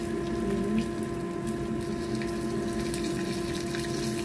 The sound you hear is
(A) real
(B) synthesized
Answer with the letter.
A